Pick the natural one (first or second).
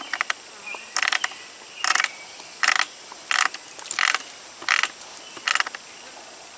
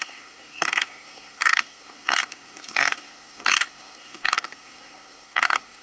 first